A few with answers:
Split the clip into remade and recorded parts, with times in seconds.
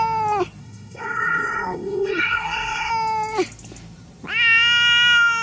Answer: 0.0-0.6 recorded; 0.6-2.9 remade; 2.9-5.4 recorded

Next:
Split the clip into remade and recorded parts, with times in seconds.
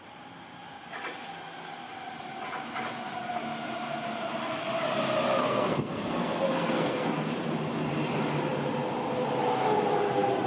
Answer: 0.0-5.4 recorded; 5.4-7.3 remade; 7.3-10.5 recorded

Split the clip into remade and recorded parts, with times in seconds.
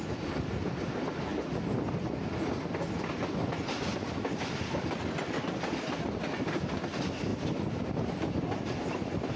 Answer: 0.0-9.4 recorded